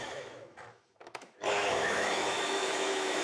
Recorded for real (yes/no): no